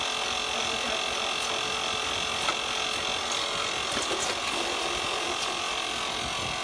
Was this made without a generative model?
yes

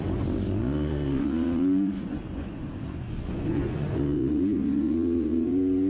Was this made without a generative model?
no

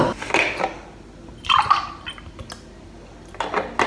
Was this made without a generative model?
yes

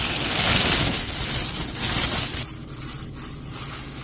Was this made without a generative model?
yes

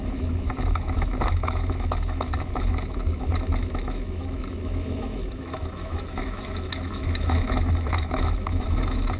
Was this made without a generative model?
no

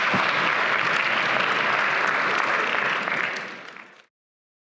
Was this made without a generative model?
yes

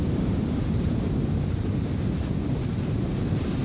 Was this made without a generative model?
yes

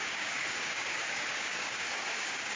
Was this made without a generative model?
no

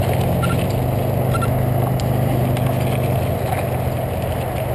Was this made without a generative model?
yes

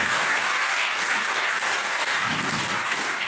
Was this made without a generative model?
no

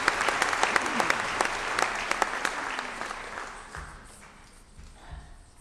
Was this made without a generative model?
yes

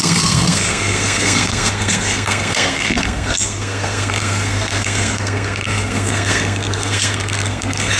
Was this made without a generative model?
no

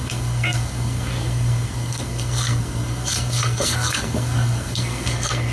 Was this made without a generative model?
no